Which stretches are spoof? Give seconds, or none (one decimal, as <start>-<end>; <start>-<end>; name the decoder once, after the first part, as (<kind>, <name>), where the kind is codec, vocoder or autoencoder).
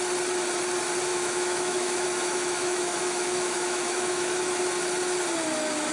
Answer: 1.1-4.6 (autoencoder, DAC-VAE)